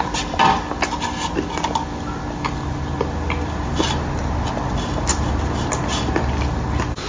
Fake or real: real